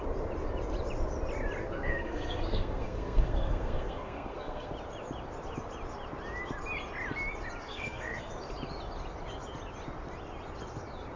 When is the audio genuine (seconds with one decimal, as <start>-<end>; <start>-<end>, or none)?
0.0-1.6; 4.7-7.6; 8.3-11.2